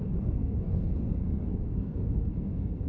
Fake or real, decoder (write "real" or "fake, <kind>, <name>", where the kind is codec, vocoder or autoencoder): fake, codec, SNAC